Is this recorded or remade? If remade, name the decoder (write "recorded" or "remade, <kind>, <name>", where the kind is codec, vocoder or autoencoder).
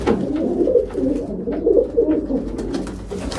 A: recorded